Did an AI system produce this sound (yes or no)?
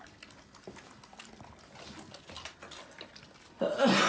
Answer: no